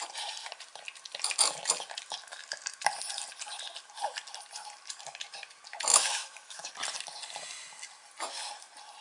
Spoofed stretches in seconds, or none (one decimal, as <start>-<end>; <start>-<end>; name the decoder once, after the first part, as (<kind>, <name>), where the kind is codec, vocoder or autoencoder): 5.9-6.7 (autoencoder, DAC-VAE)